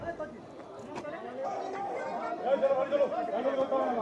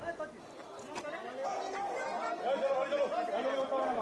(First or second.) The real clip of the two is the second